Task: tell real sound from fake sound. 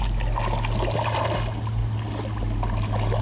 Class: real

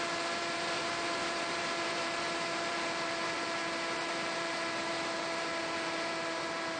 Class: fake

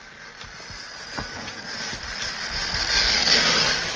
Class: real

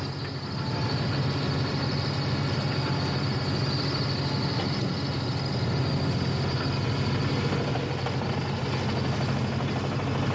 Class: real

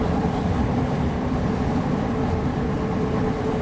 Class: fake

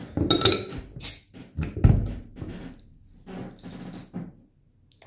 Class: real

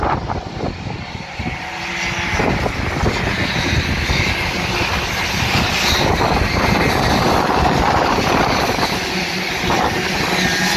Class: real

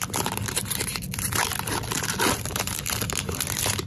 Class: fake